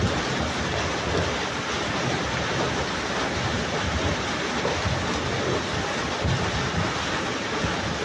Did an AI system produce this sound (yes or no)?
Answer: no